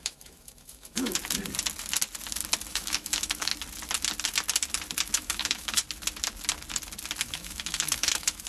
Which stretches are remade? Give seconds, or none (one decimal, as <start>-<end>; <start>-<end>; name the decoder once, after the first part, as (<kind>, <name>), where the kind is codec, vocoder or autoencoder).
0.0-1.2 (autoencoder, DAC-VAE); 2.7-3.5; 5.1-5.8; 7.2-8.5